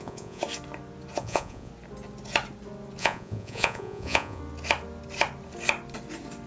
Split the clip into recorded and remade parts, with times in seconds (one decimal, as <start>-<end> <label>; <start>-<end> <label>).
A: 0.0-0.4 remade; 0.4-1.2 recorded; 1.2-1.7 remade; 1.7-3.0 recorded; 3.0-4.4 remade; 4.4-6.5 recorded